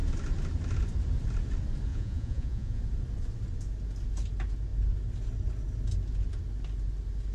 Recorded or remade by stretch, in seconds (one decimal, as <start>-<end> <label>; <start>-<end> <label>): 0.0-1.9 recorded; 1.9-2.8 remade; 2.8-7.3 recorded